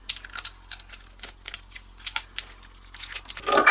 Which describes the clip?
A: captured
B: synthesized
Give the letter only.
A